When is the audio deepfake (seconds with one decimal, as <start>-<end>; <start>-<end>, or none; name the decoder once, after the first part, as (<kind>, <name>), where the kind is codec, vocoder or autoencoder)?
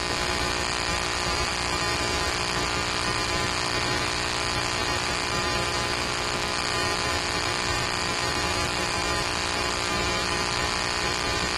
0.0-11.6 (autoencoder, DAC-VAE)